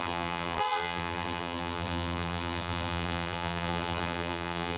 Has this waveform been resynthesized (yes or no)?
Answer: yes